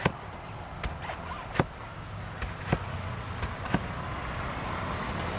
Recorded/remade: recorded